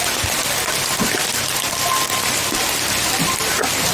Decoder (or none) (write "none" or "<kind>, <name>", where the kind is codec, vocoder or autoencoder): none